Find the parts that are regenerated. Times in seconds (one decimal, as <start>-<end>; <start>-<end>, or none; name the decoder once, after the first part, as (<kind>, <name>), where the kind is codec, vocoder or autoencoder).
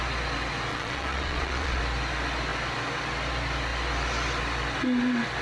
0.7-1.8 (vocoder, Vocos)